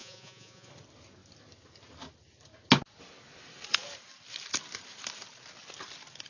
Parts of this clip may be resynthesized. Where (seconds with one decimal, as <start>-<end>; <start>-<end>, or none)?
0.0-0.7